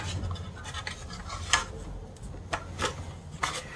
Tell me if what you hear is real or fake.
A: real